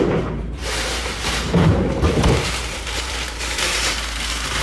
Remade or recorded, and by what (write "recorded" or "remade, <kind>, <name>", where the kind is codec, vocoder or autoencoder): remade, vocoder, BigVGAN v2